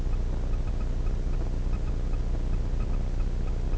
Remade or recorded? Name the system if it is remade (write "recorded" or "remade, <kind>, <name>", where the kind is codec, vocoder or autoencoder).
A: recorded